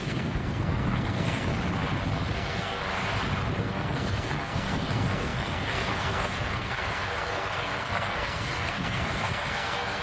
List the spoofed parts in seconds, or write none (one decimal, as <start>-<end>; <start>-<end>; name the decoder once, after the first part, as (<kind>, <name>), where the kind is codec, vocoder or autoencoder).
0.0-1.5 (codec, SNAC); 2.3-2.8; 3.6-10.0